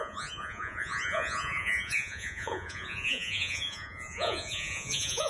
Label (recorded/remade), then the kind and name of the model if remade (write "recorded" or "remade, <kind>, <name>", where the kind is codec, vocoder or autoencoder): remade, vocoder, Vocos